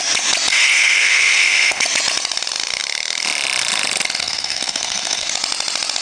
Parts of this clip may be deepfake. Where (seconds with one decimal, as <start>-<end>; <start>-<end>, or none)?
0.5-1.8; 4.2-5.3